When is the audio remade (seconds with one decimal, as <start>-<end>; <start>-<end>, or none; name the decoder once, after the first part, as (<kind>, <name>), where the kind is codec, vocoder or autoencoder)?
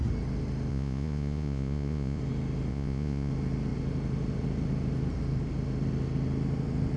0.7-2.2 (vocoder, Vocos); 2.7-3.3